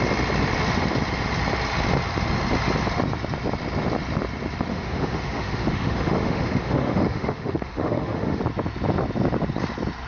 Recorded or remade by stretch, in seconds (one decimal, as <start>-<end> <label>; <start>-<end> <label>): 0.0-4.7 recorded; 4.7-8.4 remade; 8.4-10.1 recorded